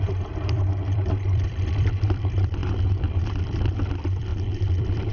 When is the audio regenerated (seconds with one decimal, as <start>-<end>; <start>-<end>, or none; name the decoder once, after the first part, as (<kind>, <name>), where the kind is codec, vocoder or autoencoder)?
0.0-5.1 (vocoder, BigVGAN v2)